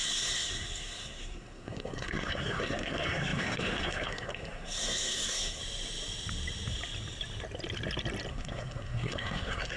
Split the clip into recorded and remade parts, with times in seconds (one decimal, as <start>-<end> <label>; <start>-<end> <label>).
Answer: 0.0-5.6 remade; 5.6-8.3 recorded; 8.3-9.8 remade